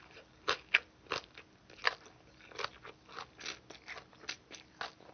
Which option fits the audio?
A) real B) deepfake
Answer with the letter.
A